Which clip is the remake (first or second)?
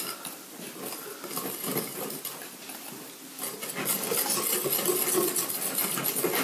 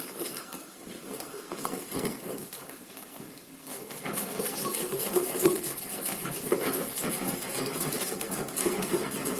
second